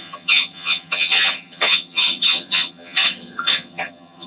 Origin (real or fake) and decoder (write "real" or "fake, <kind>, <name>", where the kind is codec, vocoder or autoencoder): fake, vocoder, HiFi-GAN